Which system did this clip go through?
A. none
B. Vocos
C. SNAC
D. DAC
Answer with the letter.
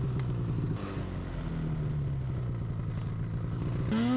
A